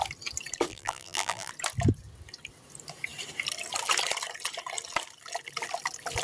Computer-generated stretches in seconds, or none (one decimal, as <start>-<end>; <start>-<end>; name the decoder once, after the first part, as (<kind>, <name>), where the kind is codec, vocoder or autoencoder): 0.7-1.5 (vocoder, BigVGAN v2)